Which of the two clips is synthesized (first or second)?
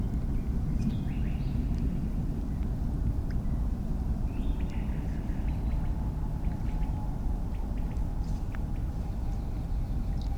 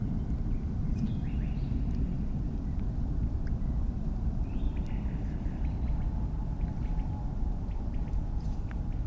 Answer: second